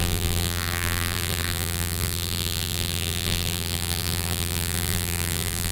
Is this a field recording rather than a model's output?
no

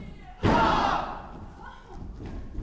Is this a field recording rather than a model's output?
yes